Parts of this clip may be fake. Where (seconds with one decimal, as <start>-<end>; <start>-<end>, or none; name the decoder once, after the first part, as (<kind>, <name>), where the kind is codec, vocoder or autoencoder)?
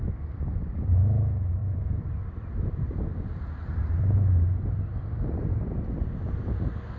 0.5-1.0 (vocoder, BigVGAN v2); 1.6-5.3